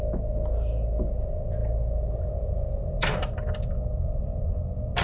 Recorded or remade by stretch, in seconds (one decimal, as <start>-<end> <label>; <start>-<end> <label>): 0.0-5.0 recorded